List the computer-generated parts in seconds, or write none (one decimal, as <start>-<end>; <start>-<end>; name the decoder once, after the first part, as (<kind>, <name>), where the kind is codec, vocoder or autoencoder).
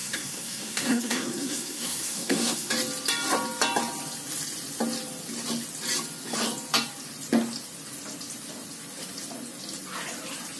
0.0-2.7 (codec, SNAC)